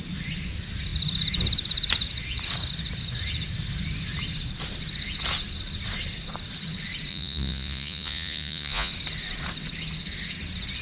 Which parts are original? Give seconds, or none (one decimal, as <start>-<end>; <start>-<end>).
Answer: 0.0-7.1; 8.9-10.8